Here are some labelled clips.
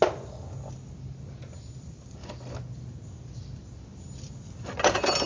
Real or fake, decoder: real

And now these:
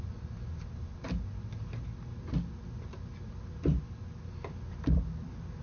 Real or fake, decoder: real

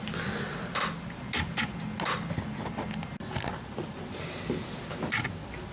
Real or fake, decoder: real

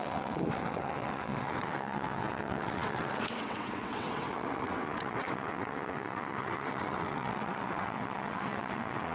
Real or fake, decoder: fake, vocoder, WaveNeXt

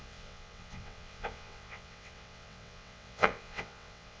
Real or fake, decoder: fake, vocoder, WaveNeXt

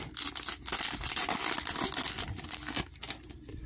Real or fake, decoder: real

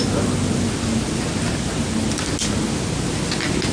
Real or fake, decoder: real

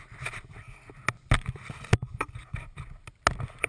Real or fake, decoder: real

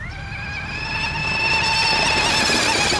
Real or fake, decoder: real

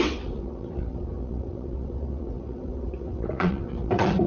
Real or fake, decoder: fake, vocoder, WaveNeXt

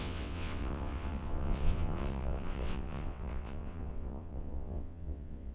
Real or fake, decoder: fake, vocoder, WaveNeXt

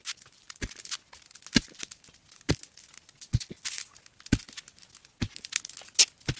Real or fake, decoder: real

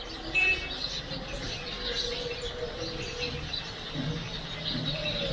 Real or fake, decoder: real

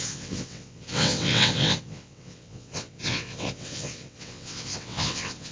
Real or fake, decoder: fake, vocoder, WaveNeXt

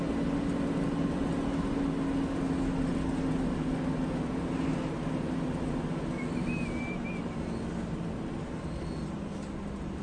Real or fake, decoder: real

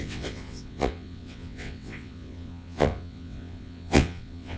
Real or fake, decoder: fake, vocoder, WaveNeXt